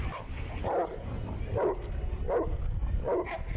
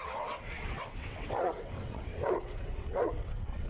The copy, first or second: second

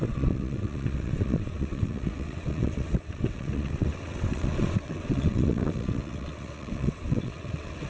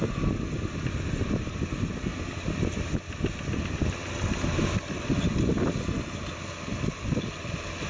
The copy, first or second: first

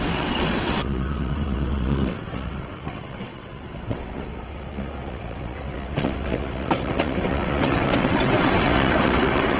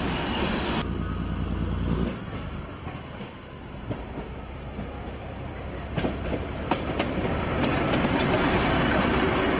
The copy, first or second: first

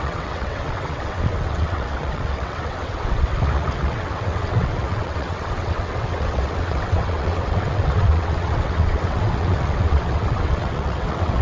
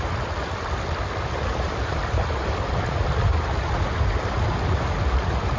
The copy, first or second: first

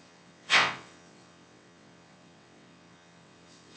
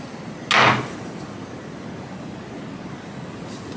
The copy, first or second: first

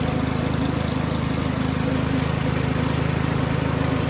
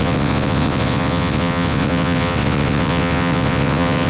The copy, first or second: second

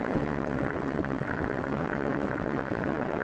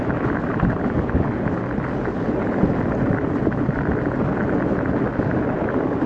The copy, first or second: first